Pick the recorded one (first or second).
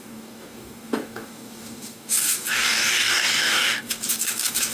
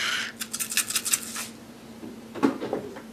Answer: second